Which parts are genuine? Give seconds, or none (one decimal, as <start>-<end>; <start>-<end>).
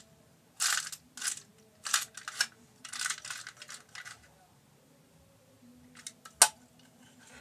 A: 0.0-7.4